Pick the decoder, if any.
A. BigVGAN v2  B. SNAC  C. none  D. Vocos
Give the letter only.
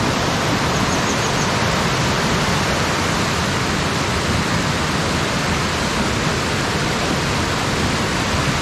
C